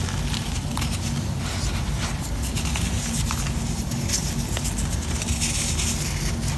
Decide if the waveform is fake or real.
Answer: real